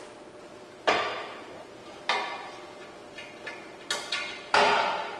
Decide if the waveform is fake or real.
real